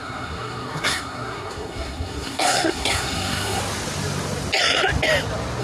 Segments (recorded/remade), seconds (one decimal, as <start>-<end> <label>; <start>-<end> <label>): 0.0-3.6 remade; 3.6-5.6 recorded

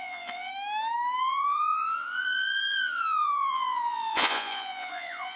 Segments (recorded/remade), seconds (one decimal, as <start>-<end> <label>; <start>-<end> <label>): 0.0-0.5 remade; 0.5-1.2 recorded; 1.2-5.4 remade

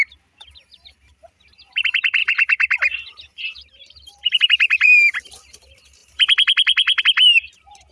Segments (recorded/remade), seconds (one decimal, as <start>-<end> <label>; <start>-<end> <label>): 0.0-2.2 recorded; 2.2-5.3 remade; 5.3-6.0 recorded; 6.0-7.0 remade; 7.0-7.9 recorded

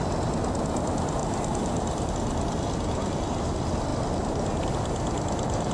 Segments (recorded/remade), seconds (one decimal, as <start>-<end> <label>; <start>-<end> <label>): 0.0-1.2 recorded; 1.2-2.1 remade; 2.1-5.7 recorded

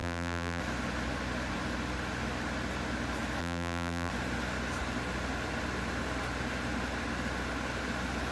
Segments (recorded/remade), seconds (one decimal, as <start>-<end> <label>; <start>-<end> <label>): 0.0-0.6 remade; 0.6-3.4 recorded; 3.4-4.1 remade; 4.1-8.3 recorded

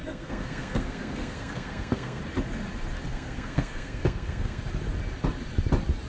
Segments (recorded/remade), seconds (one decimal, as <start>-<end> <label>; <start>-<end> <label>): 0.0-2.2 remade; 2.2-3.1 recorded; 3.1-4.6 remade; 4.6-6.1 recorded